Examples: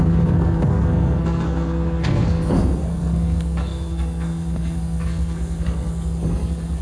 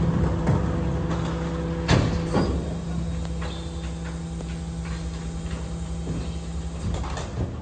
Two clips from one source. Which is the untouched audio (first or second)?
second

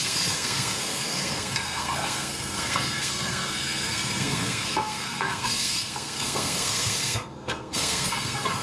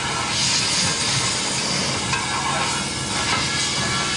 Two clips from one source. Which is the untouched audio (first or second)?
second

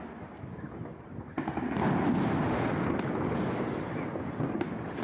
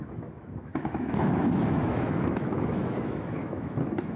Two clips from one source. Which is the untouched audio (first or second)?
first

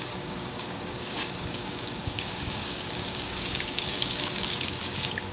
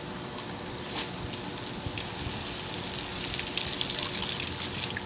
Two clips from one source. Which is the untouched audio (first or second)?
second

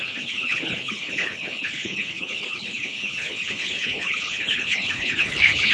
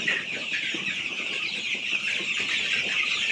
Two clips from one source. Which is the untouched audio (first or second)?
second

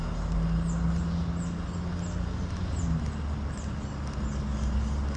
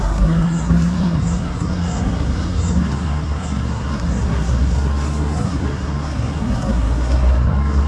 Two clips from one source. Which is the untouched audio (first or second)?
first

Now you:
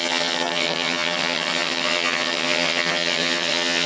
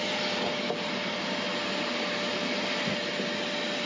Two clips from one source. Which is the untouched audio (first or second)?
second